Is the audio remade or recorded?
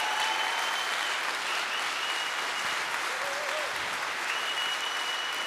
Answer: recorded